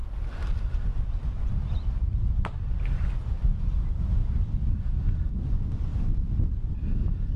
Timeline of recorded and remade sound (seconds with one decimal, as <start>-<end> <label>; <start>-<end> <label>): 0.0-7.4 recorded